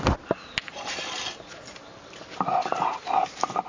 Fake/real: real